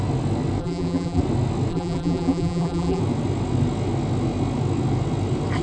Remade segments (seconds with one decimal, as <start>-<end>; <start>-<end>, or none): 0.6-1.2; 1.7-3.0